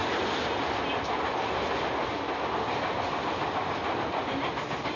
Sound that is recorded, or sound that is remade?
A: recorded